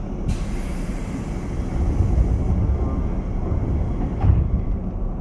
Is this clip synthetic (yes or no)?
no